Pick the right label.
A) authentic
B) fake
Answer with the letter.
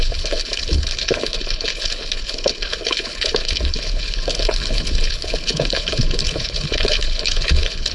B